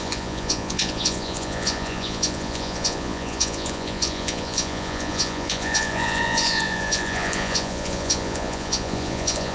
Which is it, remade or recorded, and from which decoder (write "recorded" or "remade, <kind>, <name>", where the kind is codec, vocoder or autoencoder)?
remade, vocoder, Vocos